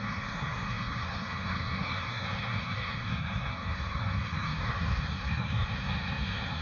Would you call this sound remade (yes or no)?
yes